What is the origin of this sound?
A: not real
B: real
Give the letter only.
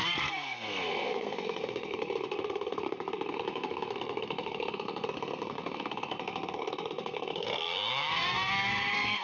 A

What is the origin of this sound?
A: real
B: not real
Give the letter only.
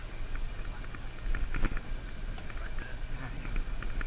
A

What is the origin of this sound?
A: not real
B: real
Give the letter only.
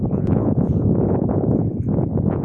A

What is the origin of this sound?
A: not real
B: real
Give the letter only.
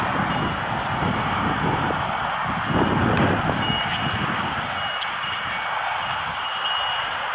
B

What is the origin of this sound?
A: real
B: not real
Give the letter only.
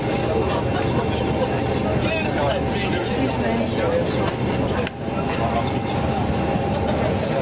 A